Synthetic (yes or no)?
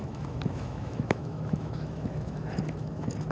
yes